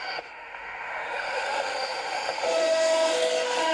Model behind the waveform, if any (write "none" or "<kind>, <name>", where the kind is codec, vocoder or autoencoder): autoencoder, DAC-VAE